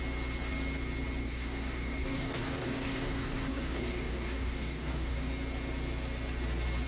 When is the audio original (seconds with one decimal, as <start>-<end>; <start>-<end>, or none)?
0.0-1.2; 5.3-6.9